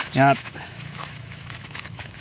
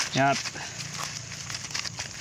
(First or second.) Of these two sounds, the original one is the second